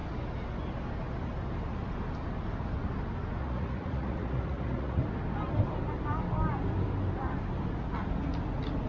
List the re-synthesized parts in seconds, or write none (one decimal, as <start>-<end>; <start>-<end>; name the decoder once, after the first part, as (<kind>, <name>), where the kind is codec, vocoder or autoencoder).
3.4-5.0 (vocoder, Vocos)